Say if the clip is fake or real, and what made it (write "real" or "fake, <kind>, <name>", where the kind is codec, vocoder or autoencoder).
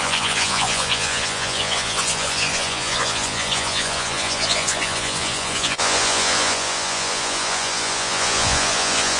fake, vocoder, Vocos